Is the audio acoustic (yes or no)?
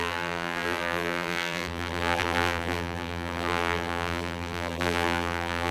no